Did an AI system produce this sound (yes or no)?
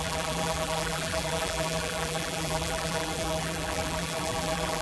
yes